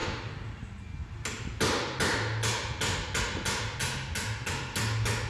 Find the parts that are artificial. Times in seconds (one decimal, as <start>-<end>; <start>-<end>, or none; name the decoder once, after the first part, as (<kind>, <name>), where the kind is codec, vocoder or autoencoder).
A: none